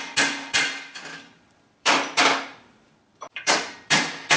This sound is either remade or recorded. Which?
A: remade